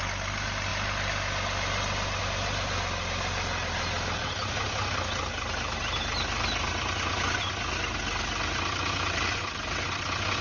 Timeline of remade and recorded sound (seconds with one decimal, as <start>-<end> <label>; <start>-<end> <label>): 0.0-10.4 recorded

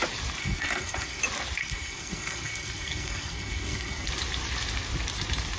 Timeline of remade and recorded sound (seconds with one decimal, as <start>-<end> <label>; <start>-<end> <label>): 0.0-0.4 recorded; 0.4-1.2 remade; 1.2-1.6 recorded; 1.6-4.1 remade; 4.1-5.6 recorded

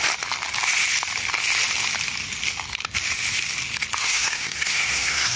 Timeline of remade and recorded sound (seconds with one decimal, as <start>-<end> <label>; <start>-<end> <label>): 0.0-4.0 recorded; 4.0-5.4 remade

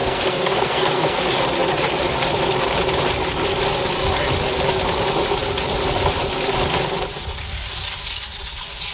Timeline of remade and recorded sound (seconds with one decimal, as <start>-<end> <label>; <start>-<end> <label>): 0.0-1.2 remade; 1.2-8.9 recorded